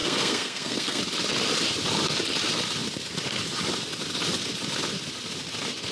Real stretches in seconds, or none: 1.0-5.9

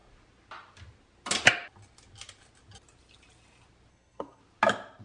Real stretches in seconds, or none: 0.0-3.9; 4.4-5.0

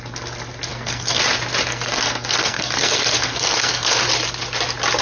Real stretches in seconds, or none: 0.0-0.7; 1.2-1.7; 4.0-5.0

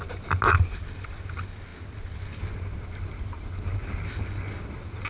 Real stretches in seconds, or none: 0.0-5.1

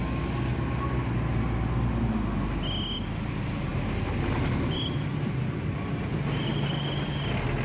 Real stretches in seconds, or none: 0.0-7.6

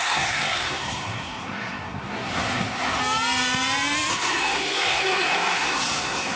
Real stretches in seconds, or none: 3.0-4.1

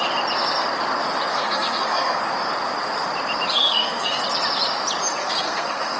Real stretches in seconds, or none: 0.0-1.3; 2.2-3.5; 4.2-5.2